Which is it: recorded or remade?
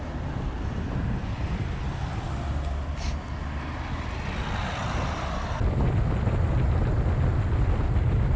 recorded